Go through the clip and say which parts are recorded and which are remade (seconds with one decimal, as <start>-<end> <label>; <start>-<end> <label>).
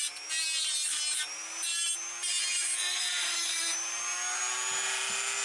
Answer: 0.0-5.4 recorded